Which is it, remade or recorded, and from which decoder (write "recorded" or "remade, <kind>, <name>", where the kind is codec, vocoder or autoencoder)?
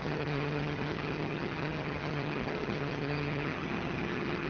remade, vocoder, HiFi-GAN